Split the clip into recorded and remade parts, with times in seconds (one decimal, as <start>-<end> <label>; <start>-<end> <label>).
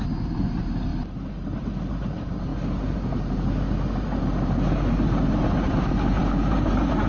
0.0-0.9 remade; 0.9-1.6 recorded; 1.6-2.5 remade; 2.5-5.4 recorded; 5.4-7.1 remade